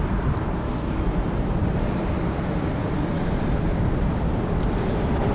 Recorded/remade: remade